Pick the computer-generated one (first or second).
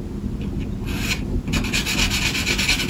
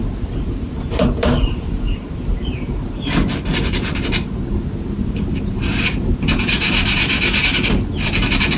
second